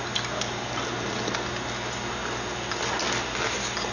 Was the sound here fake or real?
real